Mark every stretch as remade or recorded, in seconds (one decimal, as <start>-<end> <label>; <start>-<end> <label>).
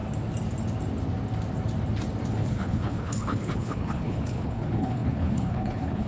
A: 0.0-2.3 recorded; 2.3-6.1 remade